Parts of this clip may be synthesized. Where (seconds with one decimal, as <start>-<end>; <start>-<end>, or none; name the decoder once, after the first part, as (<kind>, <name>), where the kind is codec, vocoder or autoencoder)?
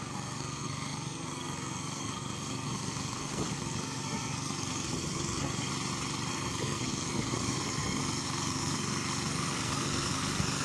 0.0-5.7 (codec, SNAC); 6.3-10.6